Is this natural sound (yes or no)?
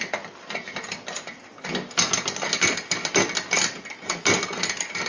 yes